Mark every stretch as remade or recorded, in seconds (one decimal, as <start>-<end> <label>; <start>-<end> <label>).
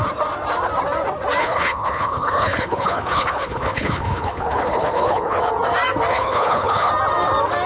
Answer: 0.0-1.4 recorded; 1.4-5.4 remade; 5.4-6.1 recorded; 6.1-6.9 remade; 6.9-7.7 recorded